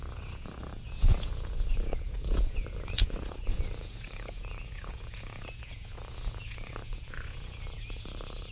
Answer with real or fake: fake